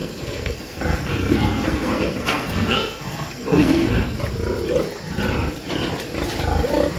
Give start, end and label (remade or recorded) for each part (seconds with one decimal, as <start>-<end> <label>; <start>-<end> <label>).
0.0-4.2 remade; 4.2-7.0 recorded